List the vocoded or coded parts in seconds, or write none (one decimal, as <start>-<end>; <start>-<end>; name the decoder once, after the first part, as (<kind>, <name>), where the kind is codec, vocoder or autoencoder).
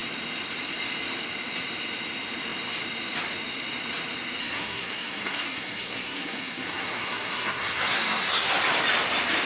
4.4-8.5 (codec, SNAC)